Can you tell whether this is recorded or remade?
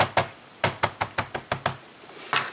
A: recorded